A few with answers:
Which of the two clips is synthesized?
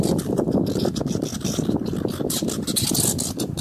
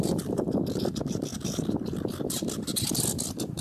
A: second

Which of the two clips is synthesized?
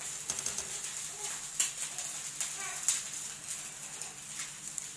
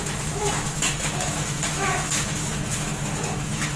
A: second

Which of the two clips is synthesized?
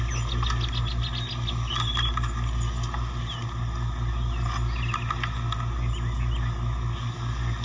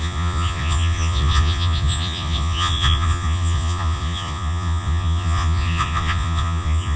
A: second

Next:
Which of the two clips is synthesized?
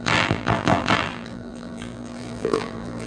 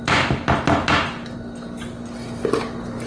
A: first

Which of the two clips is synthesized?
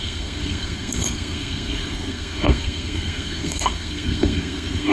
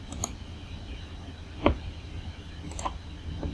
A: first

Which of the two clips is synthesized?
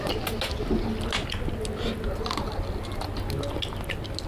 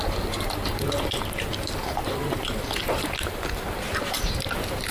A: second